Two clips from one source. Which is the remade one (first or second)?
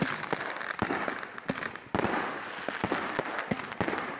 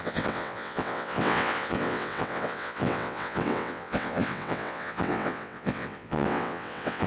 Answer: second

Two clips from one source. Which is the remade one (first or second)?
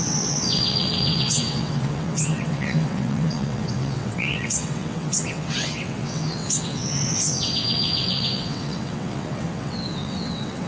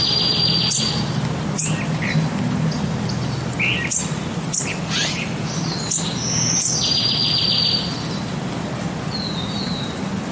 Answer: first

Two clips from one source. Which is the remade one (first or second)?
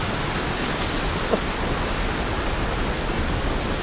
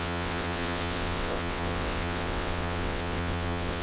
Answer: second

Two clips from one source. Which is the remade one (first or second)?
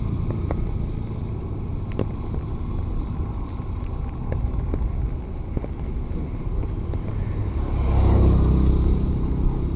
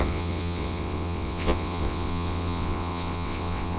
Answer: second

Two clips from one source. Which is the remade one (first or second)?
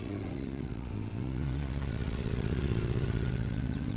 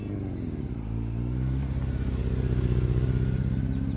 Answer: first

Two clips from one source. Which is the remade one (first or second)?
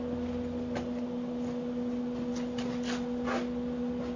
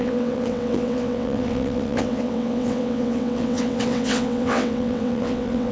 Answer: second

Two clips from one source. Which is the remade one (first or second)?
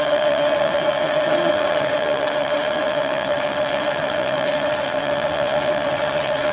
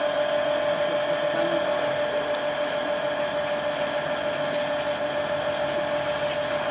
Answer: first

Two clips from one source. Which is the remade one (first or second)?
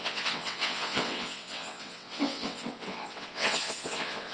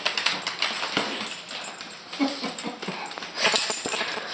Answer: first